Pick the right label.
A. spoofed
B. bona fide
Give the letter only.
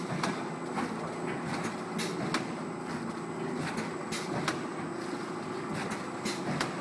B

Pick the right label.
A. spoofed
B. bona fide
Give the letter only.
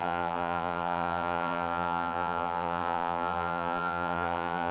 A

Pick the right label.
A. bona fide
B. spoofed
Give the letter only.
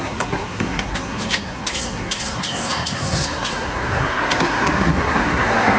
B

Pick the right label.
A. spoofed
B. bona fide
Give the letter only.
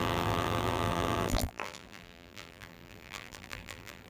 A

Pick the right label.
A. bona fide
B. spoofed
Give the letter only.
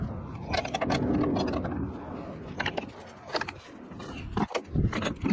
A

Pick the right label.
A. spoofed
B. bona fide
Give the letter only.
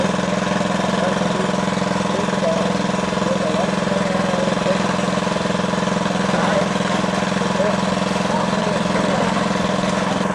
B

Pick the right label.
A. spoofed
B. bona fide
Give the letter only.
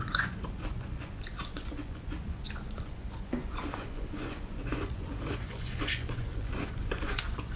A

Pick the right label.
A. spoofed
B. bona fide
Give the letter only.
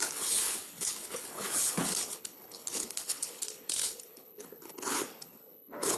A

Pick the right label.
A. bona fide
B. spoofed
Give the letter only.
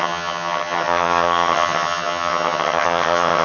B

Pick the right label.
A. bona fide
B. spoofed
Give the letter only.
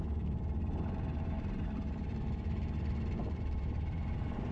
B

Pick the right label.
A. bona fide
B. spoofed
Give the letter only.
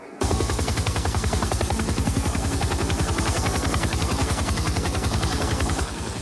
B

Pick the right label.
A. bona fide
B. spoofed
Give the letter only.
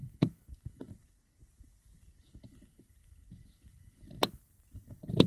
A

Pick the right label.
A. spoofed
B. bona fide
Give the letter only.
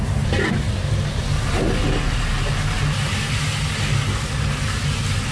B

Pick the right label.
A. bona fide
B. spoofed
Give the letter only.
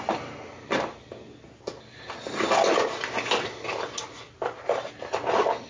A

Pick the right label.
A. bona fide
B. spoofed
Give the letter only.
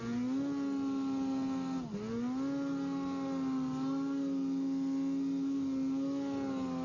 A